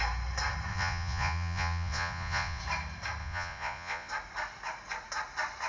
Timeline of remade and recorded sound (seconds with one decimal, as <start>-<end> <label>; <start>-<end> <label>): 0.0-0.7 recorded; 0.7-2.6 remade; 2.6-3.2 recorded; 3.2-4.1 remade; 4.1-5.7 recorded